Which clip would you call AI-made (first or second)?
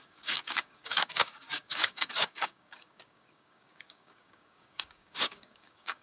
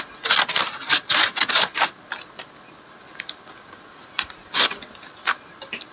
first